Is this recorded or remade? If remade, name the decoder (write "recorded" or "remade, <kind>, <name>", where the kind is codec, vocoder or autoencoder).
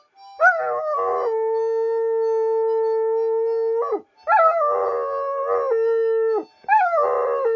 recorded